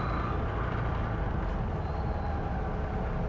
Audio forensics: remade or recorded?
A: recorded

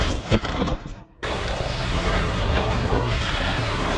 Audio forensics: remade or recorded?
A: remade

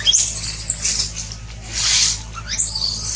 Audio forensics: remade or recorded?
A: recorded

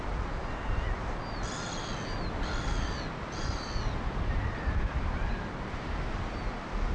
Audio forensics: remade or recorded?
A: recorded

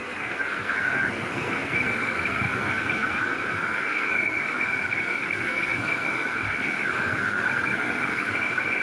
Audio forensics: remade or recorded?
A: remade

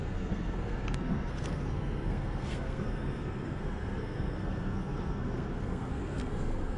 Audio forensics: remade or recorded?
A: remade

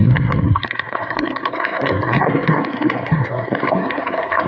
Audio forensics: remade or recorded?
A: remade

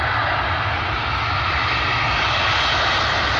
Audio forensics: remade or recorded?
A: recorded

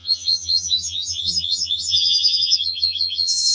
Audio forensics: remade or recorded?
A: remade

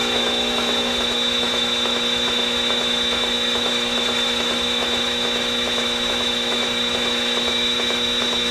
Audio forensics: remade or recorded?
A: remade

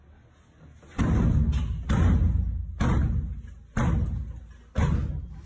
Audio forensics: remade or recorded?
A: recorded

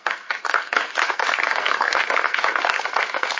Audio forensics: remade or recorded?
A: remade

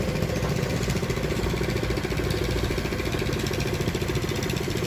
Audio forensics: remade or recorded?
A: recorded